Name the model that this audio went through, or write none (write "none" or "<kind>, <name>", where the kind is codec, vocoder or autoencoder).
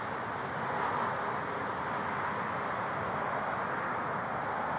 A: none